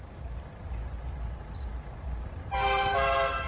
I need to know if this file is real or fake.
real